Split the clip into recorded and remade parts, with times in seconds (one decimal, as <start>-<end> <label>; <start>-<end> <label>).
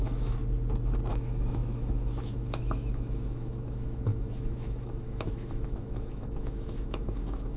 0.0-0.4 remade; 0.4-1.1 recorded; 1.1-7.6 remade